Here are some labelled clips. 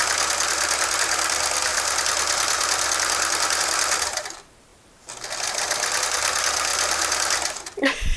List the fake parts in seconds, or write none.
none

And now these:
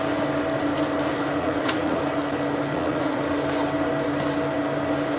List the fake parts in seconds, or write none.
1.4-2.0 (vocoder, Vocos); 2.7-3.2

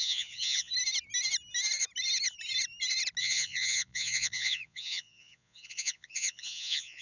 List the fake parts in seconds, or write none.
0.0-0.7 (vocoder, Vocos); 3.2-7.0

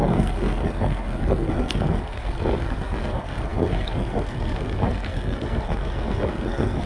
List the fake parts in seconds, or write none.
0.0-6.9 (codec, SNAC)